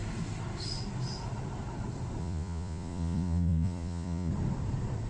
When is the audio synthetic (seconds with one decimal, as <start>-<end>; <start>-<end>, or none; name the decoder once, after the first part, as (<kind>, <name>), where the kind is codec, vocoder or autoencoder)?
2.2-4.3 (vocoder, Vocos)